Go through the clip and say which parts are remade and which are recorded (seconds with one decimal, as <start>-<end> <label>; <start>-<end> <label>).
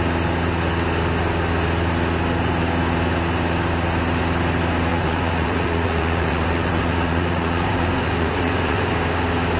0.0-4.9 recorded; 4.9-8.9 remade; 8.9-9.6 recorded